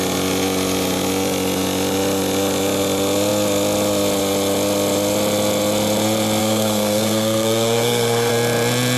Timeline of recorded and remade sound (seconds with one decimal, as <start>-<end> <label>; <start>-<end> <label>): 0.0-6.4 recorded; 6.4-8.3 remade; 8.3-9.0 recorded